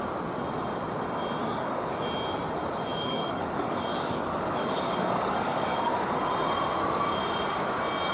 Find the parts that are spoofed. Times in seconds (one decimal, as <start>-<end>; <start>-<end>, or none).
1.4-1.9; 2.9-6.2

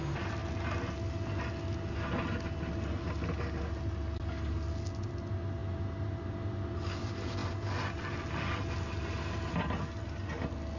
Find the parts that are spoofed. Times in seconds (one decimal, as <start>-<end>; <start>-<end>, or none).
none